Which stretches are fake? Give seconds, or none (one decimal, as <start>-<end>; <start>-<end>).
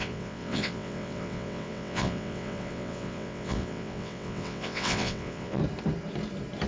0.0-5.6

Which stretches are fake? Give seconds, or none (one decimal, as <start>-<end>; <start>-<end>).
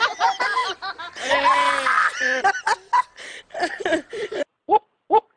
none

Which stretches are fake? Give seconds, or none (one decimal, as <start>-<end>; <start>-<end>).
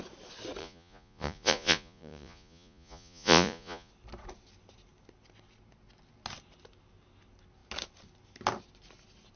0.6-3.9